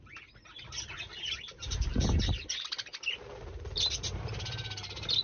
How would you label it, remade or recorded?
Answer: recorded